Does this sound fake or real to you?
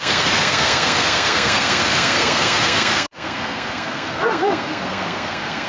fake